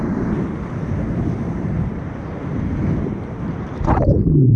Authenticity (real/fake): fake